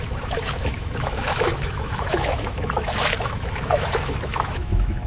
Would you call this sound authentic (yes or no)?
no